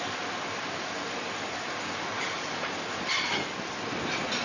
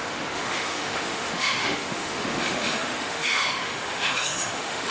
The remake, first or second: second